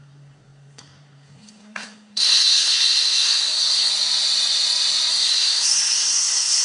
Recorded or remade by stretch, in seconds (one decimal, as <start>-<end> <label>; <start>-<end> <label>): 0.0-3.9 remade; 3.9-5.1 recorded; 5.1-6.6 remade